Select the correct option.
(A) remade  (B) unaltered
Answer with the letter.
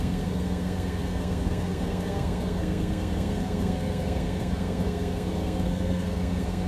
A